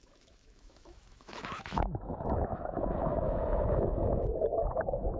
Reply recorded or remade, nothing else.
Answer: remade